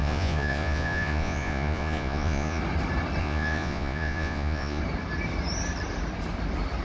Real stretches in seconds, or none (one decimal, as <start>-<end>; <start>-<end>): 2.6-3.2; 4.8-6.8